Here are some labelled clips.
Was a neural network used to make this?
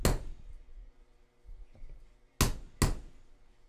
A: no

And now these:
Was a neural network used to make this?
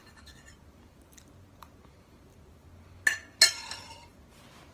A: no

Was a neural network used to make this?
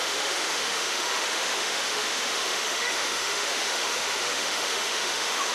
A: yes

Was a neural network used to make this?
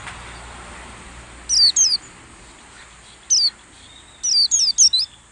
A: no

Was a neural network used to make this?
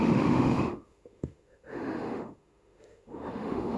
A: yes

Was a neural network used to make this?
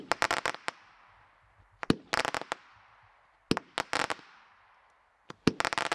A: no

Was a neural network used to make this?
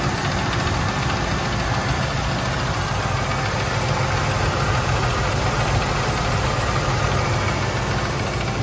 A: no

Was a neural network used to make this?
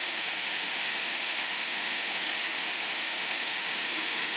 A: yes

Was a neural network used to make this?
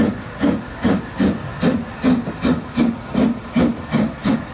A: no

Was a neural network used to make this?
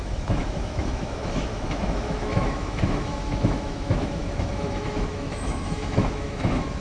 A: yes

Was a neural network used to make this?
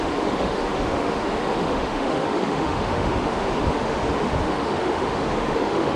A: yes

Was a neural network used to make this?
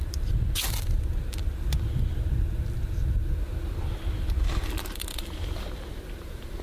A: no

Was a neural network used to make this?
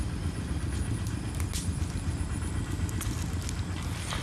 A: no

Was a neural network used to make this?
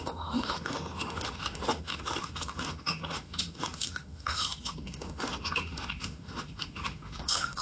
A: yes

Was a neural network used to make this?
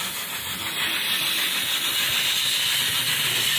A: no